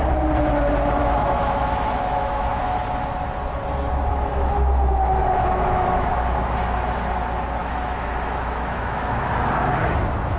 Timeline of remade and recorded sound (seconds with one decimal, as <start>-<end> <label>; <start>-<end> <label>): 0.0-1.0 recorded; 1.0-2.8 remade; 2.8-4.1 recorded; 4.1-6.1 remade; 6.1-7.6 recorded; 7.6-9.3 remade; 9.3-10.4 recorded